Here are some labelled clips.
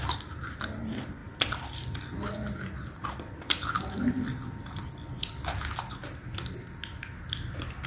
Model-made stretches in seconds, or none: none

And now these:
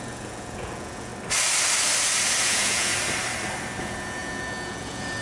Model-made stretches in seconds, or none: 0.0-1.1 (vocoder, Vocos); 2.4-2.9; 3.8-5.2

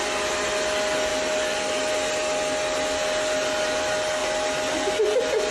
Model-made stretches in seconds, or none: none

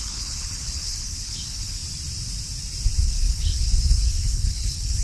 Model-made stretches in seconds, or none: 0.0-1.8 (codec, HILCodec); 3.0-5.0